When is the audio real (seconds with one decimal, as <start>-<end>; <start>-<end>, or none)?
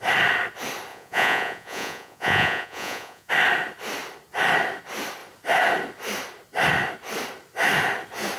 0.0-0.9; 3.3-8.4